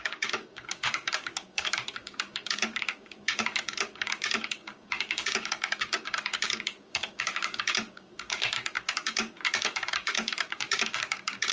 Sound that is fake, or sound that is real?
fake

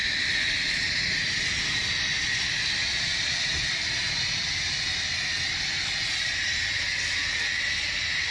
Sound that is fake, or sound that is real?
real